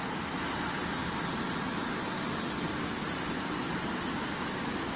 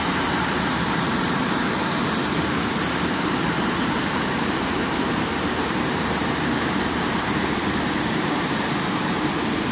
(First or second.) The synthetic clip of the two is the second